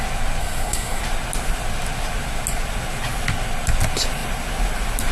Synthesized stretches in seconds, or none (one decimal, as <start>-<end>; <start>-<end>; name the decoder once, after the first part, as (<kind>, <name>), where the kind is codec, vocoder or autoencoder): 0.4-1.0 (codec, SNAC)